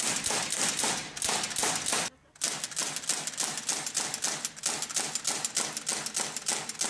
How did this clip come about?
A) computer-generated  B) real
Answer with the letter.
B